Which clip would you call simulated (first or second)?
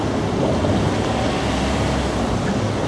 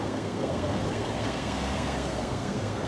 second